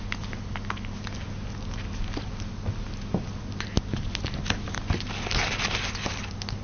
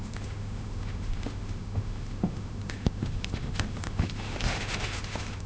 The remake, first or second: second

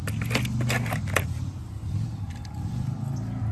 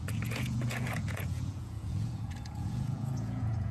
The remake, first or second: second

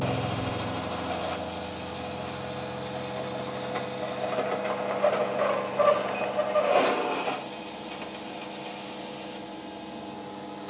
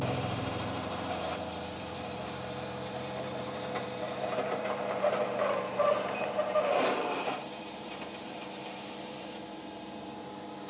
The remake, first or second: second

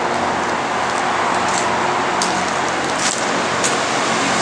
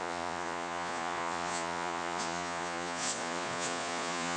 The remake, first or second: second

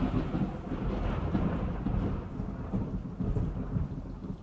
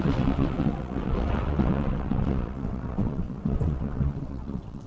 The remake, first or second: second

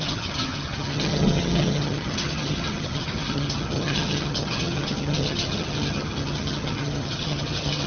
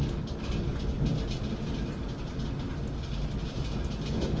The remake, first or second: first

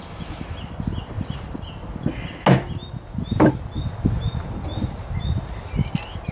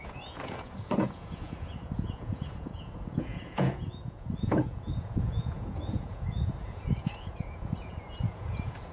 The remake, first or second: second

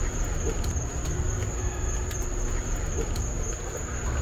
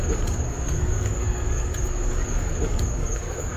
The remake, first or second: second